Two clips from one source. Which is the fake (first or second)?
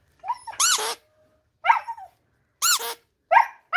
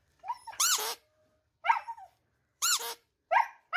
second